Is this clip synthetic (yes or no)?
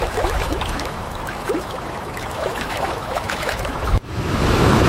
yes